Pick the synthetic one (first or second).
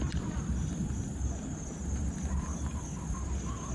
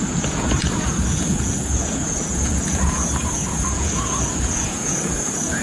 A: second